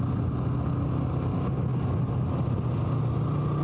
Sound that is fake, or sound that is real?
real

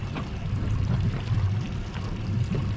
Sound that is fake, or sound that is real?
real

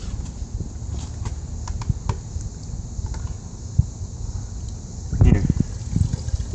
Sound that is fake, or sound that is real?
real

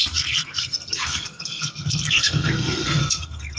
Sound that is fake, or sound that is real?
fake